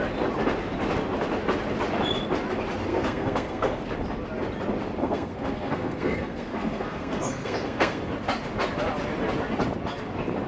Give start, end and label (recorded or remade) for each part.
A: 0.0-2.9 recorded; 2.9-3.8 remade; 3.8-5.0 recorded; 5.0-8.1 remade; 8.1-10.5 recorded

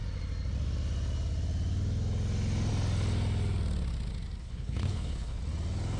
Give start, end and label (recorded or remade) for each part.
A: 0.0-4.4 recorded; 4.4-5.4 remade; 5.4-6.0 recorded

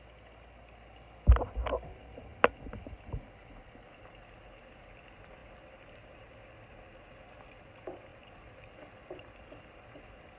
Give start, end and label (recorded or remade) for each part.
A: 0.0-10.4 recorded

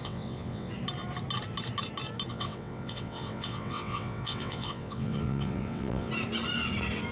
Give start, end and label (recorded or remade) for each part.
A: 0.0-0.7 remade; 0.7-2.3 recorded; 2.3-6.1 remade; 6.1-7.1 recorded

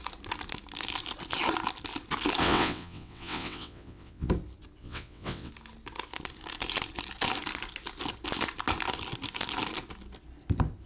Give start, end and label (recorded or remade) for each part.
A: 0.0-2.4 recorded; 2.4-4.3 remade; 4.3-4.8 recorded; 4.8-5.5 remade; 5.5-10.9 recorded